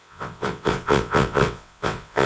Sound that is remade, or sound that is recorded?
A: remade